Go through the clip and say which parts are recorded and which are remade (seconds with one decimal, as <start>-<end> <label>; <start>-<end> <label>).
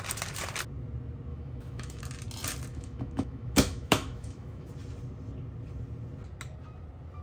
0.0-1.3 recorded; 1.3-2.0 remade; 2.0-2.7 recorded; 2.7-4.7 remade; 4.7-7.2 recorded